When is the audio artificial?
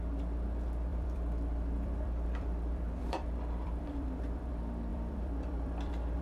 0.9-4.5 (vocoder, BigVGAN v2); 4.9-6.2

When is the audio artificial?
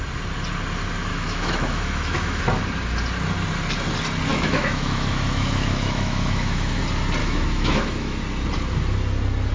1.1-2.4 (autoencoder, DAC-VAE); 4.3-6.8; 7.2-8.2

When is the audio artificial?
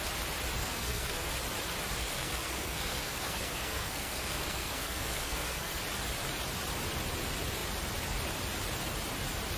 0.6-1.3 (codec, SNAC); 2.0-5.8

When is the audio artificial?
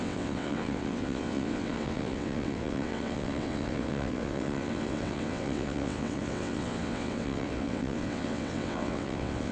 0.0-9.5 (vocoder, WaveNeXt)